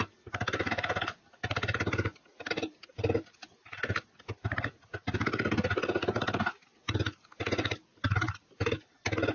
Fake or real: real